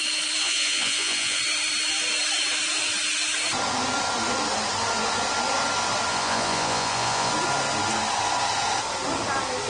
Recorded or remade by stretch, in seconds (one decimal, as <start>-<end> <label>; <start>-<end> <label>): 0.0-0.4 recorded; 0.4-1.4 remade; 1.4-6.1 recorded; 6.1-7.3 remade; 7.3-9.7 recorded